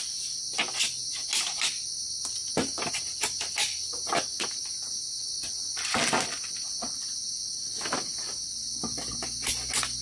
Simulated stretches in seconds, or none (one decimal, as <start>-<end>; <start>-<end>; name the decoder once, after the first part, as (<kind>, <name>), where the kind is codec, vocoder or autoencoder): none

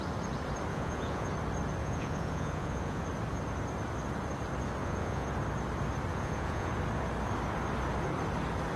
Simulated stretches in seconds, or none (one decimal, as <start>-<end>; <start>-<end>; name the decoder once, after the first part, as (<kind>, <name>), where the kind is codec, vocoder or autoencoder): 0.7-1.3 (vocoder, Vocos); 1.8-3.0; 4.8-5.3; 6.1-6.7

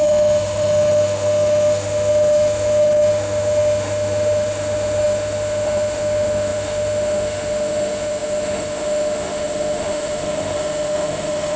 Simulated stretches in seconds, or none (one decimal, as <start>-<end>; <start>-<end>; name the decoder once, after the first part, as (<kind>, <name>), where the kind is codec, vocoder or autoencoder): 0.0-11.6 (autoencoder, DAC-VAE)

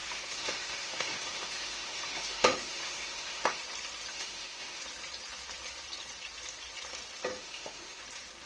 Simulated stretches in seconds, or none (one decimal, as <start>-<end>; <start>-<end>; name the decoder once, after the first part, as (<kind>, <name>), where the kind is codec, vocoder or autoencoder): 0.0-3.6 (autoencoder, DAC-VAE); 4.1-4.8; 7.3-8.0

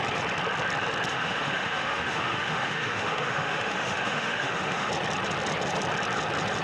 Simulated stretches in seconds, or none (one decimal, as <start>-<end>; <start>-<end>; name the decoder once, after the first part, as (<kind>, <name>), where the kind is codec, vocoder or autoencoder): 1.1-4.9 (autoencoder, DAC-VAE)

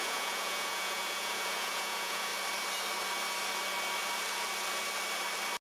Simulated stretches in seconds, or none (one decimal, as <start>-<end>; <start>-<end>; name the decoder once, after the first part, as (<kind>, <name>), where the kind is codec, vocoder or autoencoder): 0.0-2.3 (vocoder, Vocos)

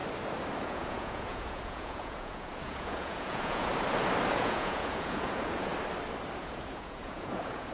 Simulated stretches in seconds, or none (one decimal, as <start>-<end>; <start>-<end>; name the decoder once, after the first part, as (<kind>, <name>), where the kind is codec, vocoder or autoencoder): 0.6-3.7 (vocoder, Vocos); 4.3-5.7; 6.4-7.7